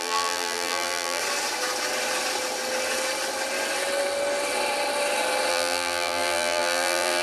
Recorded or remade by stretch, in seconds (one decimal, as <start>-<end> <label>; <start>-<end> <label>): 0.0-1.2 remade; 1.2-5.5 recorded; 5.5-7.2 remade